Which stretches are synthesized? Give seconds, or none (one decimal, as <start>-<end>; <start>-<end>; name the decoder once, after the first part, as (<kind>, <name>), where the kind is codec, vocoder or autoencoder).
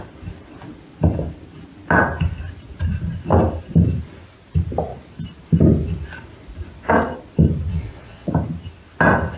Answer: 7.7-8.3 (vocoder, Vocos)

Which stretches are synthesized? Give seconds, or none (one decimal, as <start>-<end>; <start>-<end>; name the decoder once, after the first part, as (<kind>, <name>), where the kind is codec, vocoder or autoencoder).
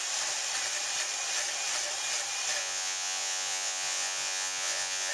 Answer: 2.6-5.1 (vocoder, Vocos)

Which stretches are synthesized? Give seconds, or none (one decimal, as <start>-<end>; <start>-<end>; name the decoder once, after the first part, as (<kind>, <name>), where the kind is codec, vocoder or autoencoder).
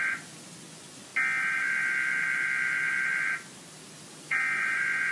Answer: 0.0-1.1 (vocoder, Vocos); 4.2-5.1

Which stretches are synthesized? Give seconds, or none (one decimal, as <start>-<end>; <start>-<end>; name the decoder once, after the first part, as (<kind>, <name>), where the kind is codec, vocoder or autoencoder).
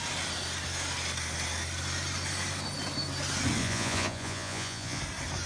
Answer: 3.6-5.0 (vocoder, Vocos)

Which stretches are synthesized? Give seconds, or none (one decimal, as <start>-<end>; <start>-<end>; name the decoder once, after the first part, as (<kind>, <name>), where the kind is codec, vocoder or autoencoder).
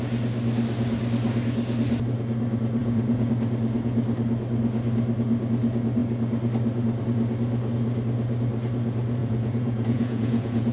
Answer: 2.8-3.3 (vocoder, Vocos); 9.2-10.7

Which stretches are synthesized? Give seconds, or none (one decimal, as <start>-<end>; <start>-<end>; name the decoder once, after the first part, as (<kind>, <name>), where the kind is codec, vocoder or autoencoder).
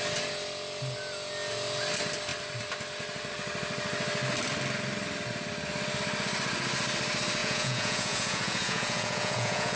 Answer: 7.4-9.8 (vocoder, Vocos)